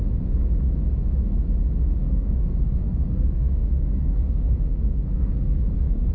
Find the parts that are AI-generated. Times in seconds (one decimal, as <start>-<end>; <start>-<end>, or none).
2.0-6.1